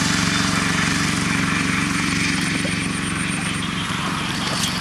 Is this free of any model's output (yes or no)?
no